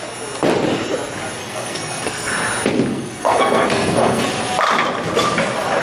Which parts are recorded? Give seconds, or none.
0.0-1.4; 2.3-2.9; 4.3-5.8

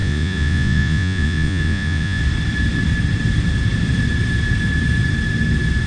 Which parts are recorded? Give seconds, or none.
2.2-5.9

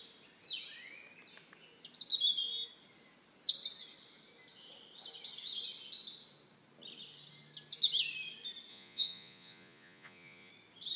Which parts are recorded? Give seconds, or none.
0.0-8.7; 10.5-11.0

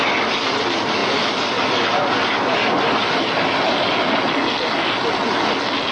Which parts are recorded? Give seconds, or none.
0.0-5.9